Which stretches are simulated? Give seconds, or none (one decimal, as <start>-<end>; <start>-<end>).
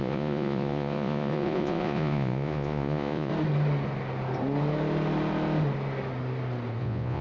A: 0.0-3.3; 6.8-7.2